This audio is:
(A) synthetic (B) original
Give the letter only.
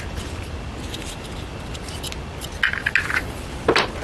B